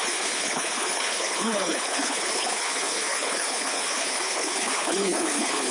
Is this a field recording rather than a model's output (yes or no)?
no